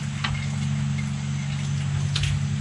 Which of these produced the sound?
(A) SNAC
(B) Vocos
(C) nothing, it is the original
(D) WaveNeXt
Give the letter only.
C